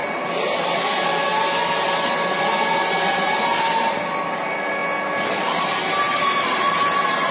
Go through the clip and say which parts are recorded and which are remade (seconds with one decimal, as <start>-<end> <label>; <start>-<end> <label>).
0.0-7.3 recorded